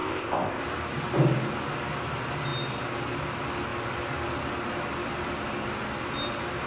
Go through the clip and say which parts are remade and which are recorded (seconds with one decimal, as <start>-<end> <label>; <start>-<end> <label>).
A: 0.0-0.6 remade; 0.6-6.7 recorded